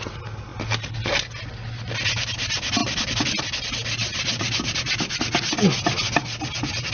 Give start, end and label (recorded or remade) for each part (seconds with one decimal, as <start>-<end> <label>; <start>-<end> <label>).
0.0-2.8 recorded; 2.8-3.4 remade; 3.4-4.1 recorded; 4.1-5.1 remade; 5.1-6.9 recorded